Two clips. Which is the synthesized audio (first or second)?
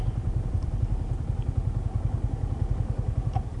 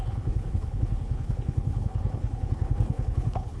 second